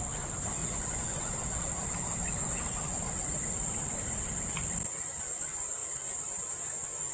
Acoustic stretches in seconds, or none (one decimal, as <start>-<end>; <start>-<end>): 0.0-0.6; 1.3-7.1